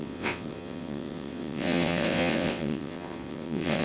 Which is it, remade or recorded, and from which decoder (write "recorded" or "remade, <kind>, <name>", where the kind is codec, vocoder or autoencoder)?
remade, vocoder, WaveNeXt